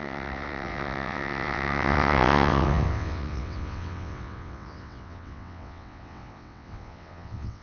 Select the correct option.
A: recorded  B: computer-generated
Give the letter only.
B